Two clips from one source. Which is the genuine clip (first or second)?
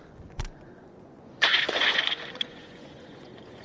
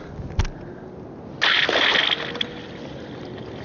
second